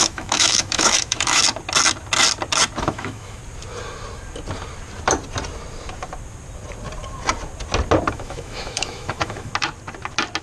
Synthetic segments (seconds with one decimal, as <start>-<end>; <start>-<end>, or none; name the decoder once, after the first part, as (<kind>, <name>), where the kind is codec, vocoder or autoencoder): 0.0-1.4 (autoencoder, DAC-VAE); 2.8-3.4; 8.1-9.5